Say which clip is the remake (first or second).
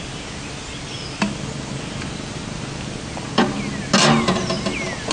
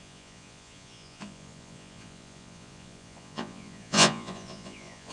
second